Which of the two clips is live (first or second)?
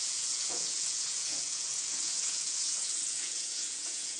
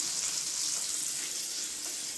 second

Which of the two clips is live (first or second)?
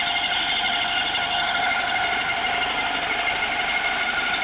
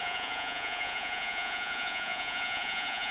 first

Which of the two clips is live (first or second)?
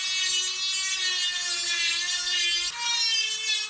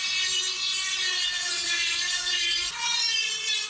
first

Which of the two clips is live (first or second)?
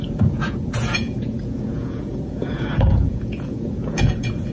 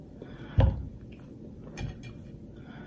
second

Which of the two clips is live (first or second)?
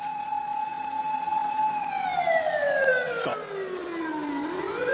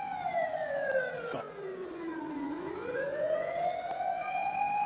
first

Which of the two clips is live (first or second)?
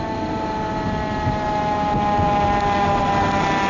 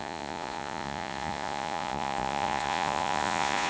first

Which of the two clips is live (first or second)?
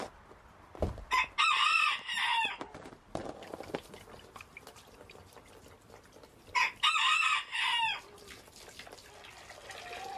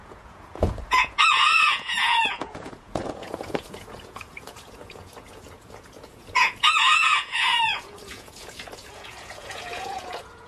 first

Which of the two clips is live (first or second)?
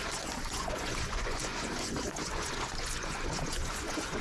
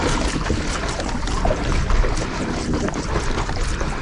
second